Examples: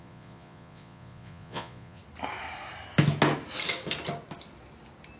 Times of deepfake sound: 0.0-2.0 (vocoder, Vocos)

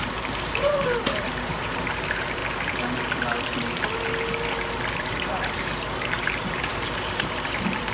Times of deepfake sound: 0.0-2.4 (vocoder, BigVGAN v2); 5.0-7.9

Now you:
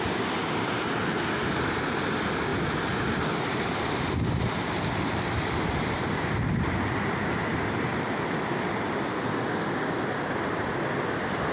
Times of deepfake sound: none